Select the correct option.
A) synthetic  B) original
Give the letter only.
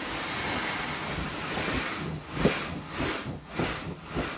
B